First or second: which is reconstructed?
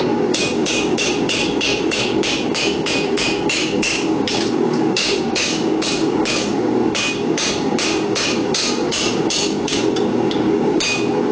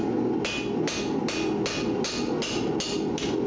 first